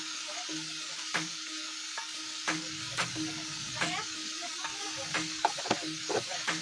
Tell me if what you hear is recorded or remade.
remade